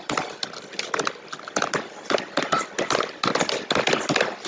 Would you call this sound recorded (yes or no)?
yes